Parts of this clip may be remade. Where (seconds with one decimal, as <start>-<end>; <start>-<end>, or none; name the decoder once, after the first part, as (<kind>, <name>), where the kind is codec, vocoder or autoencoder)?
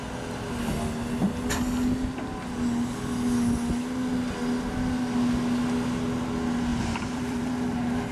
6.7-8.1 (vocoder, BigVGAN v2)